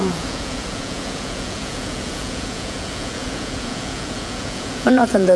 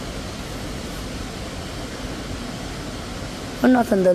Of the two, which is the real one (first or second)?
second